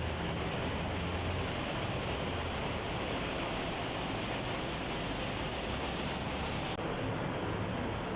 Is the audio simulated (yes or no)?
no